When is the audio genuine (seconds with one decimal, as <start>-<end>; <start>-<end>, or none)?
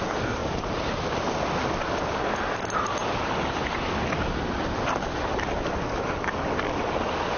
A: 0.0-7.4